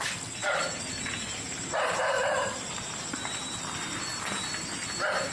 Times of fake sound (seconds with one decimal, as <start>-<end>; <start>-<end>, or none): 0.4-3.6